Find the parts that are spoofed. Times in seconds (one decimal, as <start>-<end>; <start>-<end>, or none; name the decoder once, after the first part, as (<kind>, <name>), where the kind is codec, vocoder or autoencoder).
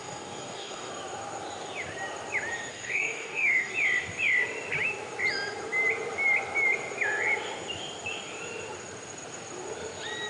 0.0-0.9 (codec, DAC); 2.7-3.7